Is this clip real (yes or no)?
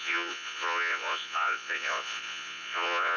no